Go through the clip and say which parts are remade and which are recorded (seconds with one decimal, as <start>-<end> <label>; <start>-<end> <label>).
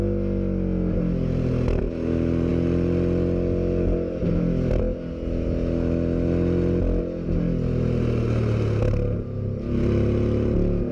0.0-10.9 recorded